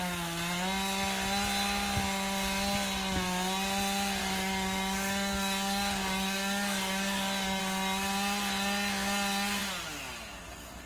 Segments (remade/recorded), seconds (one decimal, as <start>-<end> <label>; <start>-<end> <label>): 0.0-4.2 recorded; 4.2-7.6 remade; 7.6-10.9 recorded